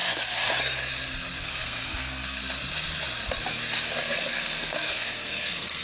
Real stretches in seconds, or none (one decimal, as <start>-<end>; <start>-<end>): 0.0-1.4; 2.4-4.0